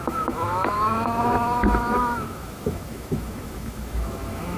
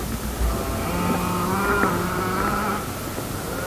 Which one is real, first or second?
second